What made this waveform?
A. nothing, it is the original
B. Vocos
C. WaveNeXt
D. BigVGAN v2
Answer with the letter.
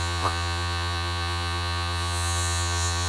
B